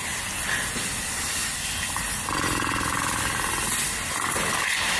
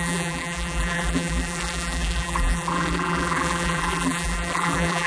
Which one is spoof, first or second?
second